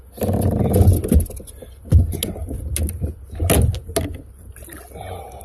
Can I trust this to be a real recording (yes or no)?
yes